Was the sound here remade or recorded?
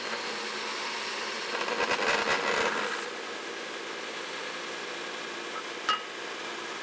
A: recorded